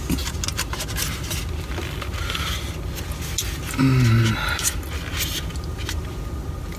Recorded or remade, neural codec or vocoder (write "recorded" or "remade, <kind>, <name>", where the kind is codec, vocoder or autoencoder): recorded